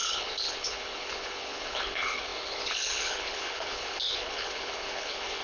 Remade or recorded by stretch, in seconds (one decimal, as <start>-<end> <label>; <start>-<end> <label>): 0.0-5.4 remade